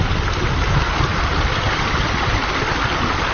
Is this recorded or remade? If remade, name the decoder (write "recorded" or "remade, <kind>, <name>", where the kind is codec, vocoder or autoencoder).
remade, vocoder, BigVGAN v2